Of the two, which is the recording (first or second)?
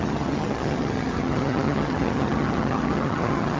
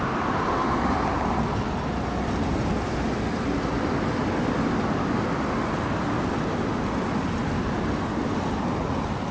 second